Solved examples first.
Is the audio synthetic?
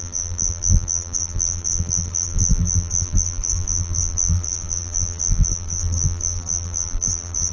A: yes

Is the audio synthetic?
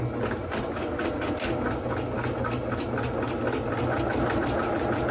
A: no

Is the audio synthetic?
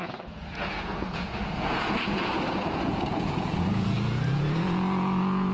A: yes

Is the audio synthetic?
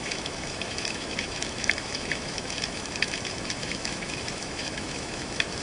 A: yes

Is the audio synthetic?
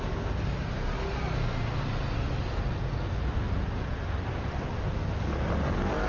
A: no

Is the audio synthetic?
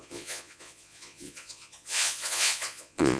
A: yes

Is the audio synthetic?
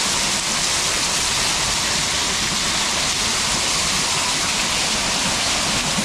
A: no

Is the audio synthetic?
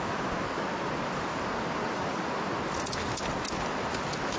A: no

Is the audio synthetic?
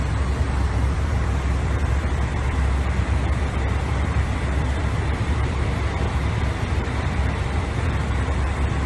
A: yes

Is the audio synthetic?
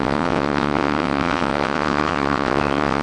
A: yes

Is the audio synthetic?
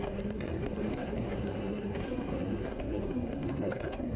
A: yes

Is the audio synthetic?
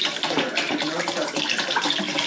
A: yes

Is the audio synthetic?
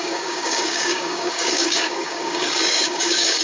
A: yes